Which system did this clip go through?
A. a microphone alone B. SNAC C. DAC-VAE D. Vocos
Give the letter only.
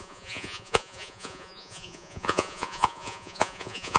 D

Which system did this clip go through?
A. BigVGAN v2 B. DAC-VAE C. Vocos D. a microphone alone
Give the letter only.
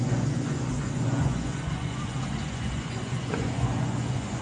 C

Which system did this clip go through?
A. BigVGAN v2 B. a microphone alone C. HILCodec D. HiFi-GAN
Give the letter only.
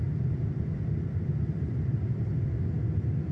B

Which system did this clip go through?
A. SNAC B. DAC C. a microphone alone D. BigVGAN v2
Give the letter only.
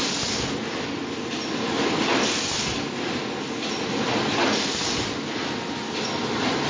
C